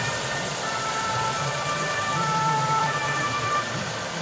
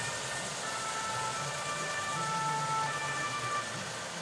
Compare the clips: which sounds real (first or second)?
second